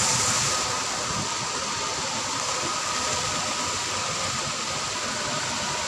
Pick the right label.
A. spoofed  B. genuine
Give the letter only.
B